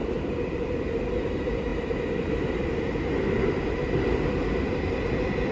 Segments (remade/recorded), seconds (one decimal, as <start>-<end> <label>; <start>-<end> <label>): 0.0-1.0 remade; 1.0-5.5 recorded

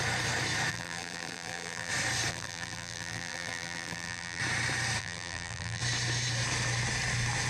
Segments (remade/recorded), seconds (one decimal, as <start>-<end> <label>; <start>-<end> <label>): 0.0-0.7 recorded; 0.7-1.9 remade; 1.9-2.3 recorded; 2.3-4.4 remade; 4.4-5.0 recorded; 5.0-5.8 remade; 5.8-7.5 recorded

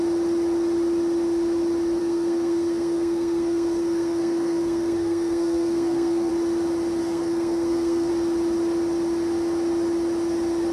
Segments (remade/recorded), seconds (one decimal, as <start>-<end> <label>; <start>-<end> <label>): 0.0-2.0 recorded; 2.0-6.3 remade; 6.3-7.0 recorded; 7.0-8.1 remade; 8.1-10.7 recorded

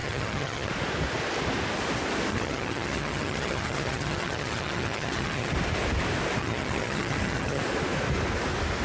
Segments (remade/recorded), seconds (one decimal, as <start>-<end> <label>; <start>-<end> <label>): 0.0-0.7 remade; 0.7-2.3 recorded; 2.3-5.5 remade; 5.5-6.4 recorded; 6.4-7.6 remade; 7.6-8.8 recorded